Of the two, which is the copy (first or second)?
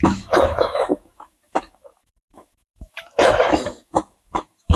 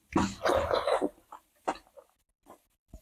first